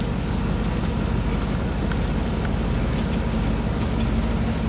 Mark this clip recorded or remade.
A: recorded